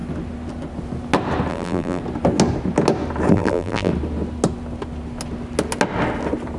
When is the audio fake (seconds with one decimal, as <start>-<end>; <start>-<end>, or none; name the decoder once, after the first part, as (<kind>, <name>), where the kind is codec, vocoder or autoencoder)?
1.5-2.0 (vocoder, BigVGAN v2); 3.3-3.9